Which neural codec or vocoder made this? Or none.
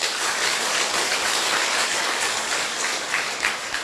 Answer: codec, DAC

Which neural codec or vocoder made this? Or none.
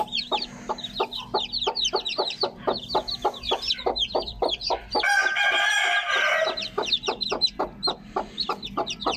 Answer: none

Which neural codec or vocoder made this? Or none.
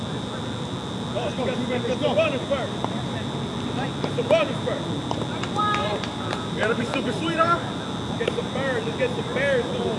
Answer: vocoder, BigVGAN v2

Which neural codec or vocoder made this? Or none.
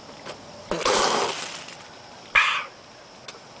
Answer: none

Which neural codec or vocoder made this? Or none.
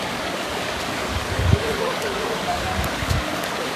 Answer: codec, DAC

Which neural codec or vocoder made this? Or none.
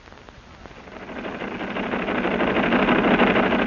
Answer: none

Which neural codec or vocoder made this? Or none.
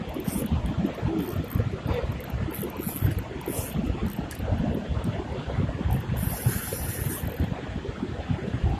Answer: none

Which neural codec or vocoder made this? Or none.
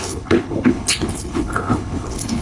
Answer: codec, HILCodec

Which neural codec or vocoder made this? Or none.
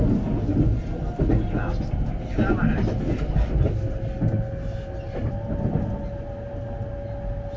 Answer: none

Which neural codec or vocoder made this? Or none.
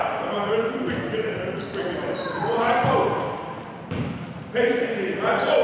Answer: none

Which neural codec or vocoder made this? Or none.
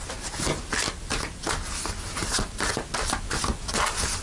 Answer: none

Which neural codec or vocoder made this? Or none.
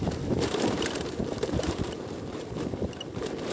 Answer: vocoder, BigVGAN v2